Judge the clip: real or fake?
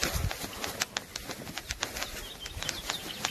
real